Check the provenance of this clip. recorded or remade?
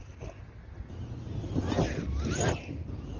recorded